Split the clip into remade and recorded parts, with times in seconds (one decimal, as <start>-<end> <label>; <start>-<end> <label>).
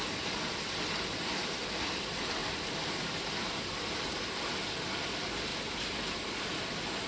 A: 0.0-2.4 recorded; 2.4-2.9 remade; 2.9-7.1 recorded